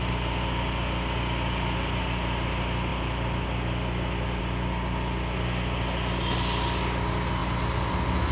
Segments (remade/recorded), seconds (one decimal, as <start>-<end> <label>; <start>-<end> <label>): 0.0-8.3 recorded